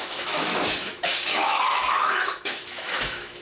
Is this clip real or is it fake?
fake